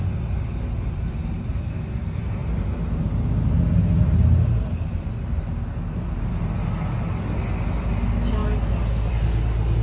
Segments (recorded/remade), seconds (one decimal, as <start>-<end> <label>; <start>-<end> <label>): 0.0-9.8 recorded